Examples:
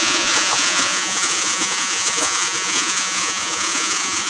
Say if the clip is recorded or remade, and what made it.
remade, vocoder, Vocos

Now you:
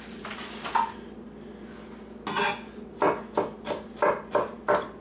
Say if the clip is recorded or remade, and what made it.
recorded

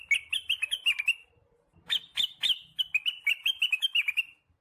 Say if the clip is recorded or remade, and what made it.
recorded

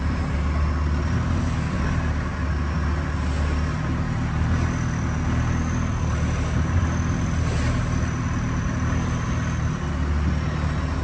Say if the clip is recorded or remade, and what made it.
recorded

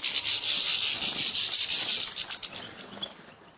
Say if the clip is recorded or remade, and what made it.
recorded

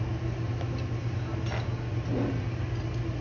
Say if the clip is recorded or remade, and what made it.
recorded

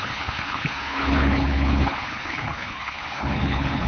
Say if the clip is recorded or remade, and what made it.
remade, codec, HILCodec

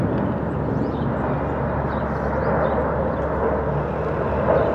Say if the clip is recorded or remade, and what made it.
recorded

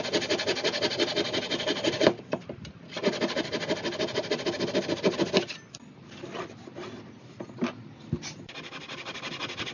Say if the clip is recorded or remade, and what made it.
recorded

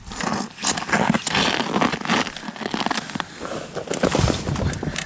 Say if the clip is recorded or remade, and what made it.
recorded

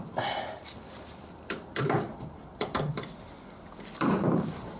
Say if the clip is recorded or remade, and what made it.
remade, vocoder, BigVGAN v2